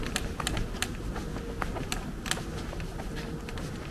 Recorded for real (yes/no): yes